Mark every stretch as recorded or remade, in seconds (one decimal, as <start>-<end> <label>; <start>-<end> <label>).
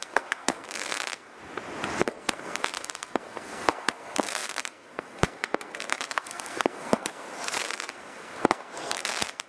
0.0-1.4 remade; 1.4-2.0 recorded; 2.0-9.5 remade